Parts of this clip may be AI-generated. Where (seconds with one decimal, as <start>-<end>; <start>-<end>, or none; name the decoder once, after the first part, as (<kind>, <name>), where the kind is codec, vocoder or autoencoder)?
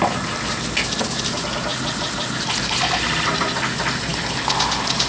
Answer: none